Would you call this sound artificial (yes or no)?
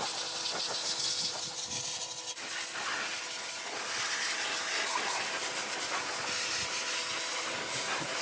no